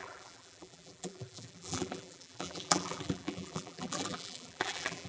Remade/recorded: remade